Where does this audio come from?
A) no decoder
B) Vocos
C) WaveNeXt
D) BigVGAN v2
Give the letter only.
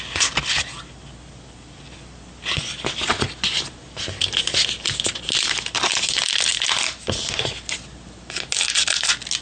A